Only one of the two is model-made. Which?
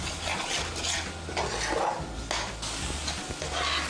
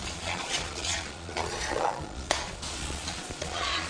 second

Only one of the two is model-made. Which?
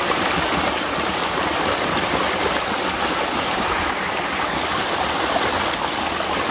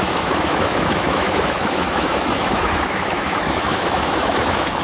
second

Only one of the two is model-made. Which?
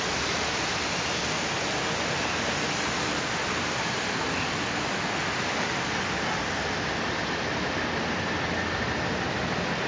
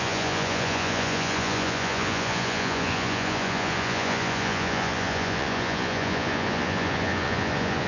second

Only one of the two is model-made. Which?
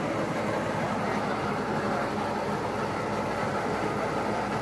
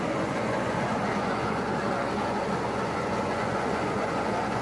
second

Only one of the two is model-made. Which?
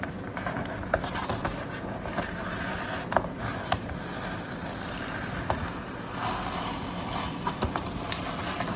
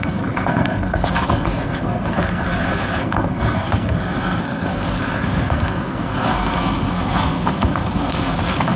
second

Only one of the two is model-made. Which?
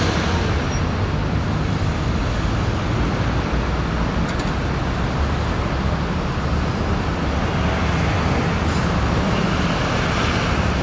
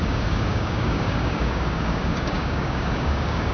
second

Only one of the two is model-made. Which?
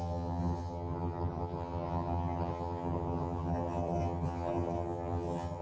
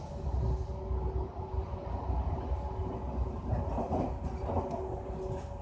first